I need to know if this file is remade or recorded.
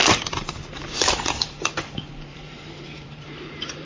remade